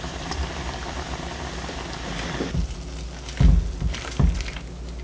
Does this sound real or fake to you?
real